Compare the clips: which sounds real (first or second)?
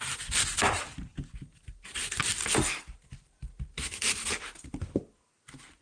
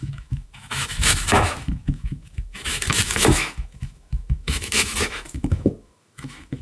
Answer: first